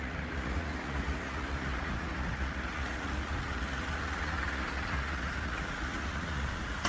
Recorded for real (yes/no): no